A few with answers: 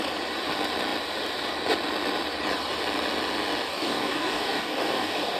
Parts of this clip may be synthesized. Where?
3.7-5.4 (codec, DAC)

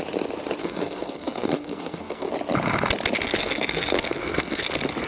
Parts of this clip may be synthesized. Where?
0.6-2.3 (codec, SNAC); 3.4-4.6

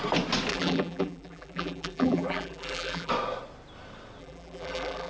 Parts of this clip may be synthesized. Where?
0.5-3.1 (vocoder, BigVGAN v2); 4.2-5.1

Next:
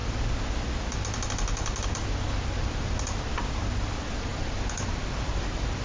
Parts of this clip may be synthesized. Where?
none

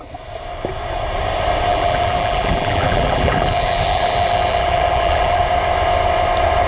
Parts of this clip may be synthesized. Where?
1.7-5.4 (vocoder, BigVGAN v2)

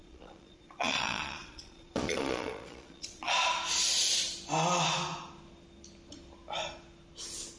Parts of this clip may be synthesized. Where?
0.0-3.3 (vocoder, Vocos)